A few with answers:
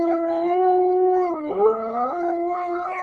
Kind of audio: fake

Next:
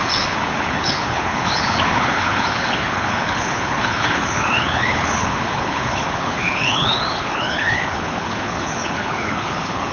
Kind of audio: fake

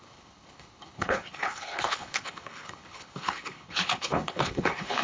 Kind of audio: fake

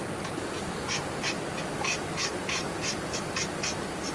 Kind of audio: real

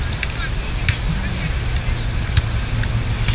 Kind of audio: real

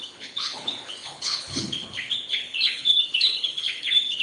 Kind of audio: fake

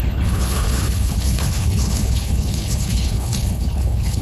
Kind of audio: fake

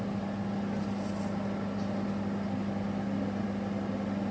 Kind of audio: real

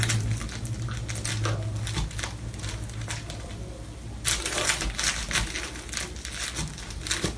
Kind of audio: real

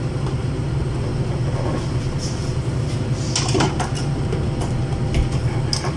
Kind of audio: real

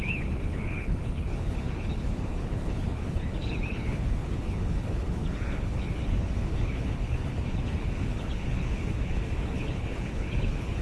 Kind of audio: fake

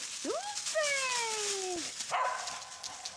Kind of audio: real